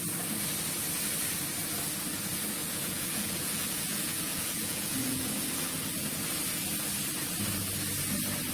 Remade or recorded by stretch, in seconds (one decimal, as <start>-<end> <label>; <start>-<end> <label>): 0.0-2.6 recorded; 2.6-5.3 remade; 5.3-8.5 recorded